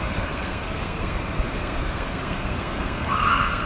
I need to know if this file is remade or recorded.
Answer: remade